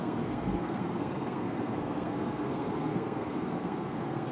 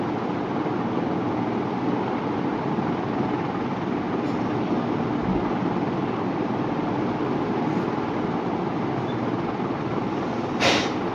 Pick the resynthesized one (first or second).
first